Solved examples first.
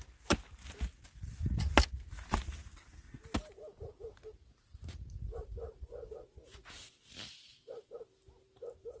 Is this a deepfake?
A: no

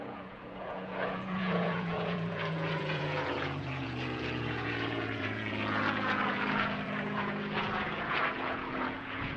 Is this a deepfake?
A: yes